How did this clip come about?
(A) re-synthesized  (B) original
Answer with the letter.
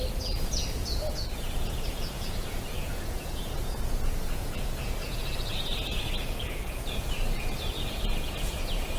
A